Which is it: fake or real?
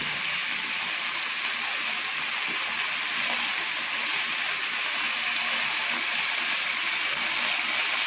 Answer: real